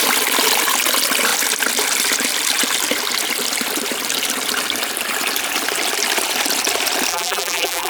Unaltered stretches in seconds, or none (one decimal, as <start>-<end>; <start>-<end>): 0.0-7.1